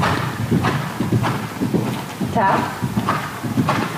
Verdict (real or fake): real